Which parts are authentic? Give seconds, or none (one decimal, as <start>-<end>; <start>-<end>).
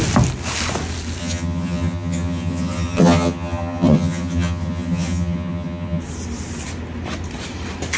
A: 0.0-1.2; 6.0-8.0